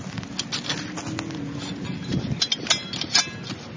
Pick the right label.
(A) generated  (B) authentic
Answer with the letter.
B